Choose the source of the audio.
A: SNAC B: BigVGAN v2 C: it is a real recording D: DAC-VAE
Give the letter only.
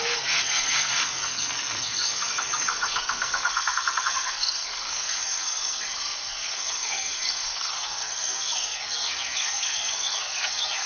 A